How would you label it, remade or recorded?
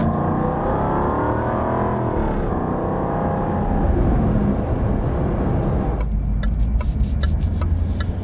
recorded